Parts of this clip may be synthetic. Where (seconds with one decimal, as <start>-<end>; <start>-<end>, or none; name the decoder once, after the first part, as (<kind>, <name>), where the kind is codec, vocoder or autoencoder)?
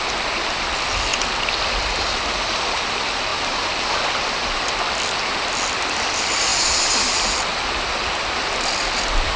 none